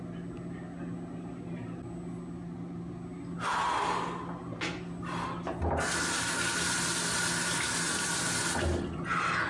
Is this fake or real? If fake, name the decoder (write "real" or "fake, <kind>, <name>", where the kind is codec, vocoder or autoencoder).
real